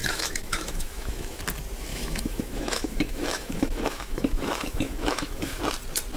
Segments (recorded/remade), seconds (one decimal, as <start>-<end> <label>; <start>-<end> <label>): 0.0-1.4 remade; 1.4-1.9 recorded; 1.9-5.6 remade; 5.6-6.2 recorded